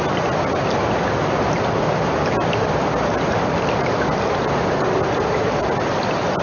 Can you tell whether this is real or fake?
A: real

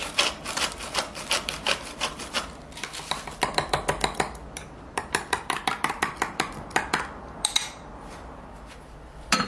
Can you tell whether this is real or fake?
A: fake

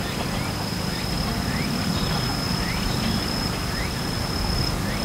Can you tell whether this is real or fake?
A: real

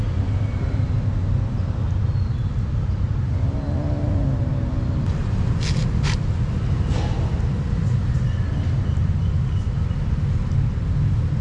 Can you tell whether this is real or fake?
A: real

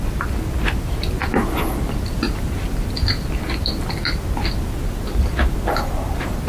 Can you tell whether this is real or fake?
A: real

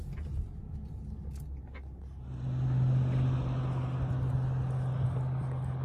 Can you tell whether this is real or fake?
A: real